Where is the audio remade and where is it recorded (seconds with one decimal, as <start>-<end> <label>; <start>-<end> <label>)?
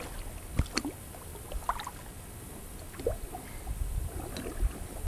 0.0-5.1 recorded